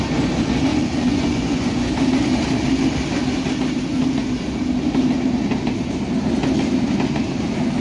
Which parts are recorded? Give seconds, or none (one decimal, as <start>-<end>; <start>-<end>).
0.0-0.7; 1.9-7.8